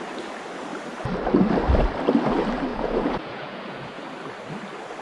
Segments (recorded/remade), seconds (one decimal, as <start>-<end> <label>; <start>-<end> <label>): 0.0-2.7 recorded; 2.7-4.0 remade; 4.0-5.0 recorded